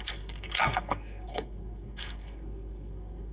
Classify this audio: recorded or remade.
remade